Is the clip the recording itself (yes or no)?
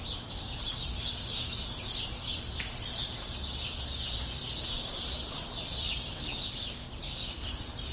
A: yes